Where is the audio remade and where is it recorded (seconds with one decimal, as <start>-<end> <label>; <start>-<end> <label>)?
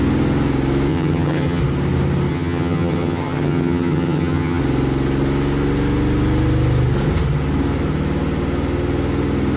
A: 0.0-0.9 recorded; 0.9-1.6 remade; 1.6-2.3 recorded; 2.3-4.6 remade; 4.6-9.6 recorded